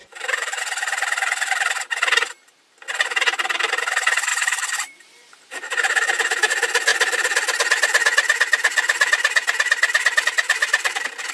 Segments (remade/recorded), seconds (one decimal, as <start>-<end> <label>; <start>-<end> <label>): 0.0-0.6 remade; 0.6-4.3 recorded; 4.3-6.5 remade; 6.5-10.6 recorded; 10.6-11.3 remade